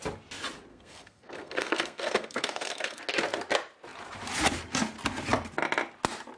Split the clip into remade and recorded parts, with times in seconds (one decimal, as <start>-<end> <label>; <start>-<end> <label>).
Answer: 0.0-0.7 recorded; 0.7-3.0 remade; 3.0-6.4 recorded